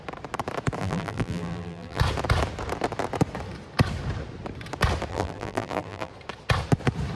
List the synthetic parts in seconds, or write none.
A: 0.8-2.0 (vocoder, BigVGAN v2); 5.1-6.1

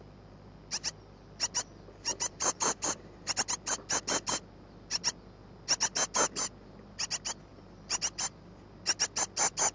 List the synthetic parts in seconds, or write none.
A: 2.1-3.3 (vocoder, BigVGAN v2); 7.5-8.0

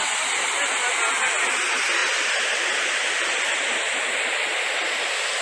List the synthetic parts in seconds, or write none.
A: none

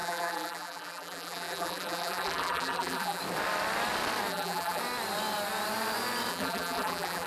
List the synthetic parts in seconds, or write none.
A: 0.0-3.2 (vocoder, BigVGAN v2); 4.3-4.8; 6.3-7.3

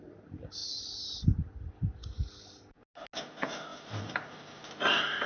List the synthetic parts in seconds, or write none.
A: 3.7-5.3 (vocoder, BigVGAN v2)